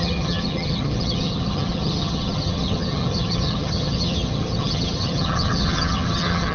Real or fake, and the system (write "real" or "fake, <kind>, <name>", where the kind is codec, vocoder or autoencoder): fake, vocoder, HiFi-GAN